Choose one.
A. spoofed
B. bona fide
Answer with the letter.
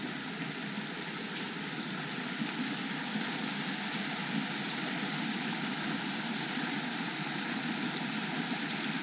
B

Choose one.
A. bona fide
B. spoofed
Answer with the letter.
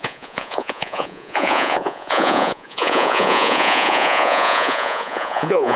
B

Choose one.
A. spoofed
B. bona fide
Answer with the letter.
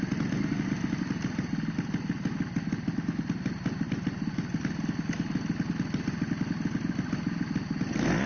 B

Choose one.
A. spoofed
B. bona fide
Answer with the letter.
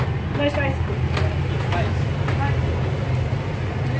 B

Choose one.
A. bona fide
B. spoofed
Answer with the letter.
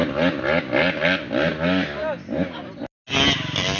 A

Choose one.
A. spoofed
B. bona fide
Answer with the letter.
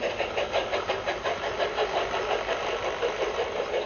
A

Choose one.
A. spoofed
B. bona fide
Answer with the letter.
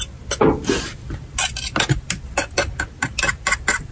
B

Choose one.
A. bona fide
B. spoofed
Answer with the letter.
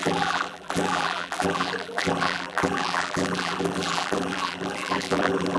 B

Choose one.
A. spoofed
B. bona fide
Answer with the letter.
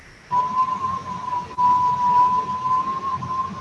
B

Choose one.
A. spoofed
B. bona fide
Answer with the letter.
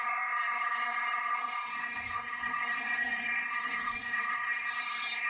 A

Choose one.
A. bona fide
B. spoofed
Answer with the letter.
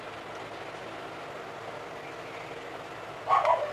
A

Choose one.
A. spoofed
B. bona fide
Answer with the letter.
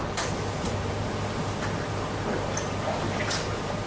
B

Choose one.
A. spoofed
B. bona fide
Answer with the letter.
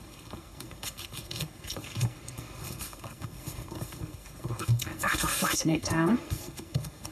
A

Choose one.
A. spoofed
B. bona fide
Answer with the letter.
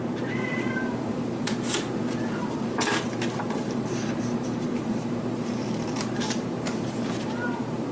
A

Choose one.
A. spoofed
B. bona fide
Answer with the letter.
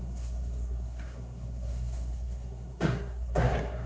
A